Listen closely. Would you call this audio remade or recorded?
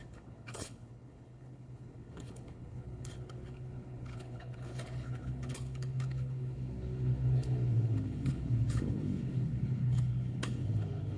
remade